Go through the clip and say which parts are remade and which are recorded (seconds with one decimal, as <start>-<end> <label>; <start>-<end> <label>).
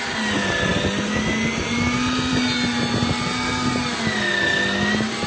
0.0-5.3 recorded